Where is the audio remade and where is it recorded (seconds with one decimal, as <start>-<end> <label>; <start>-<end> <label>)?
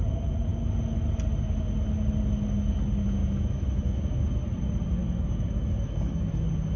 0.0-3.2 recorded; 3.2-4.0 remade; 4.0-5.0 recorded; 5.0-6.3 remade; 6.3-6.8 recorded